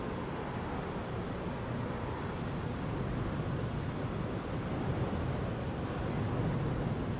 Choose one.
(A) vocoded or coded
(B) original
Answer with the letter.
B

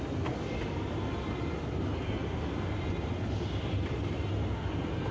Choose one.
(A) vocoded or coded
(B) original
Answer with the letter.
B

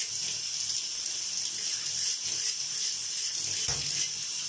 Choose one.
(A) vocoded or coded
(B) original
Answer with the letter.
B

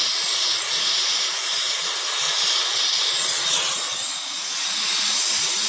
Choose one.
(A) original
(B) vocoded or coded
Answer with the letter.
B